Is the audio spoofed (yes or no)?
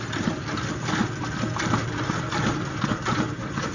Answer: no